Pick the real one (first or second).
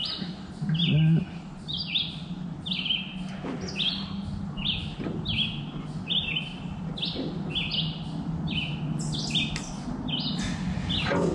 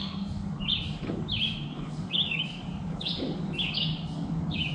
first